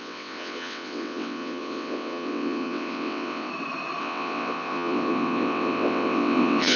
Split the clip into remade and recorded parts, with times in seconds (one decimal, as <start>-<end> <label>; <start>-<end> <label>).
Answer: 0.0-3.5 remade; 3.5-4.0 recorded; 4.0-6.8 remade